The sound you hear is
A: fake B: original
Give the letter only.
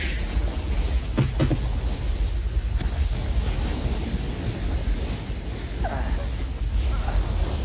B